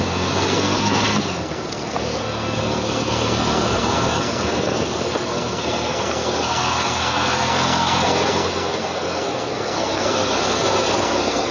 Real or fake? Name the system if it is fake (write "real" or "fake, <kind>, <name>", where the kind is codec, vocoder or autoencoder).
fake, codec, SNAC